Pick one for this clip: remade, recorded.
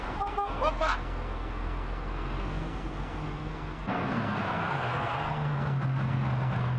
remade